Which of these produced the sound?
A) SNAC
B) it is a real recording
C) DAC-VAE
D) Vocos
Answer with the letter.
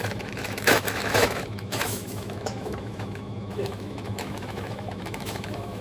C